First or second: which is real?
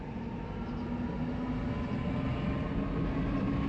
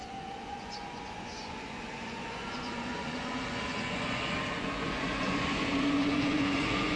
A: first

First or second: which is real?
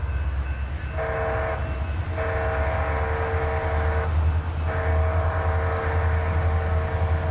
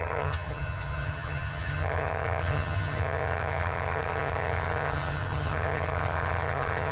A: first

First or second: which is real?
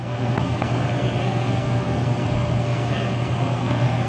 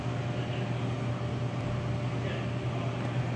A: second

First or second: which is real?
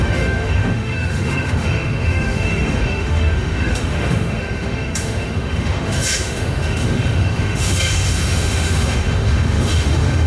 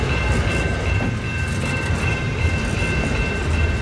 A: second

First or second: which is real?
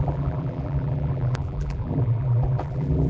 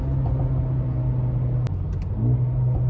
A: second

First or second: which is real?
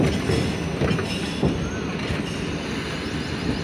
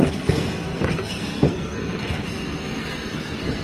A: first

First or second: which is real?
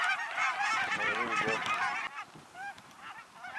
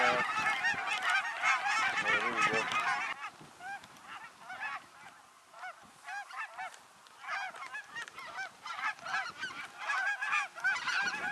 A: second